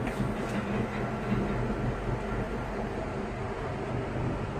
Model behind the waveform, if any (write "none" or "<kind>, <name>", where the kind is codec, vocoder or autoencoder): none